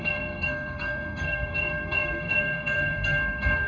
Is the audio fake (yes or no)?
yes